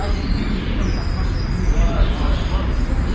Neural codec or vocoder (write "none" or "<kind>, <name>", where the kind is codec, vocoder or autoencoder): none